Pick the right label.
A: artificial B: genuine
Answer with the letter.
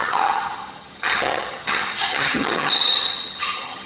A